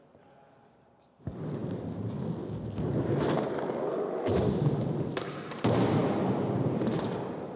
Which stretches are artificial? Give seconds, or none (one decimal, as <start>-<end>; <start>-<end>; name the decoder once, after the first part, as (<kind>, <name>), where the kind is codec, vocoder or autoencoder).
none